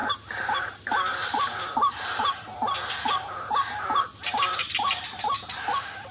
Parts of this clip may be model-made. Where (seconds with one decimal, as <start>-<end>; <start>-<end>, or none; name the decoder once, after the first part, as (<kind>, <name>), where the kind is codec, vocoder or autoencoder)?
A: none